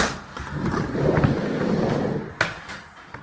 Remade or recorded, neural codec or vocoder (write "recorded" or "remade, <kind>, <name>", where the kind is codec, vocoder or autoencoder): recorded